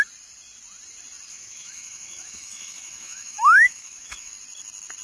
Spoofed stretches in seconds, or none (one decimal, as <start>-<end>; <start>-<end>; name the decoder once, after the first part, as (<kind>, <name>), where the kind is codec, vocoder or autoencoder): 1.3-4.3 (autoencoder, DAC-VAE)